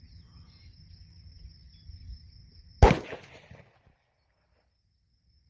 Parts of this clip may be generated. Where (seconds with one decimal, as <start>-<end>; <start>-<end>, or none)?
none